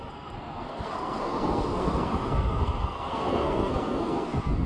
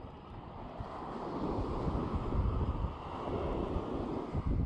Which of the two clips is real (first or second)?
second